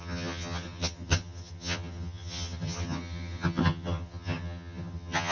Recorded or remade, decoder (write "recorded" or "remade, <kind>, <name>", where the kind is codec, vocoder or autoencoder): remade, vocoder, HiFi-GAN